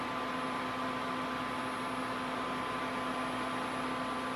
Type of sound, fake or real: real